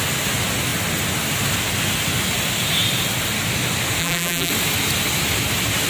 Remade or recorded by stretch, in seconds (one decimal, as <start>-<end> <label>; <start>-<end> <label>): 0.0-4.0 recorded; 4.0-4.5 remade; 4.5-5.9 recorded